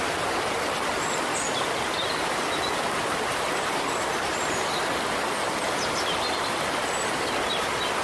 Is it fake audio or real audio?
real